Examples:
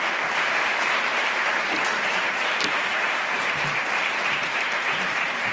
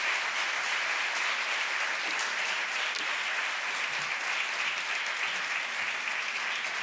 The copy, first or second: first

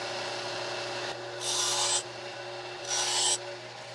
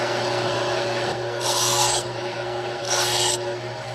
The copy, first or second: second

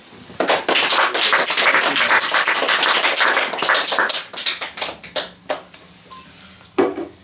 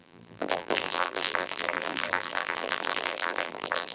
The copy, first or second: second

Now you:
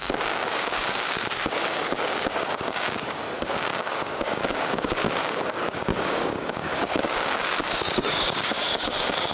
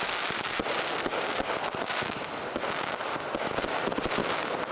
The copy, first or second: first